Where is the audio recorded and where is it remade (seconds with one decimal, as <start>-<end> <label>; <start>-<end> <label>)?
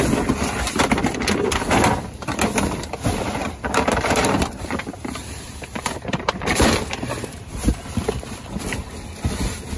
0.0-3.4 recorded; 3.4-7.9 remade; 7.9-9.8 recorded